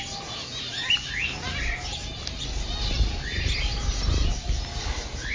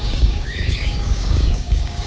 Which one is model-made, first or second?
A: second